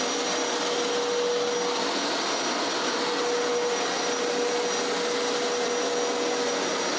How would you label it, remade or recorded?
recorded